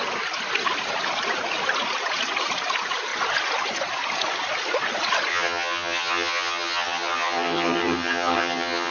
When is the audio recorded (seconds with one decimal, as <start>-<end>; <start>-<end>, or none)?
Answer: 0.0-5.3